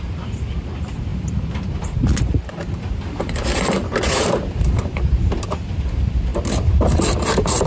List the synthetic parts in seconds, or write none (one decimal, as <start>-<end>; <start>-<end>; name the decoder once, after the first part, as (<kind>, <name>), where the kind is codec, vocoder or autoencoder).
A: 0.0-7.7 (vocoder, BigVGAN v2)